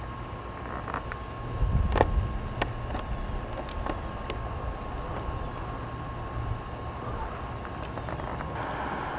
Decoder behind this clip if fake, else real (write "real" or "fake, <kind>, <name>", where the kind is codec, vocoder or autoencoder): real